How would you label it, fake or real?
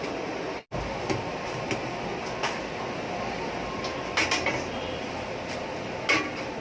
real